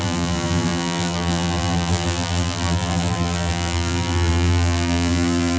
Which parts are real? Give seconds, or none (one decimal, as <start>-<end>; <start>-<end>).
none